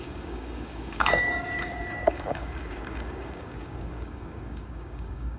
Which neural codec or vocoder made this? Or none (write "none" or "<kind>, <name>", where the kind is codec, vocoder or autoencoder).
codec, DAC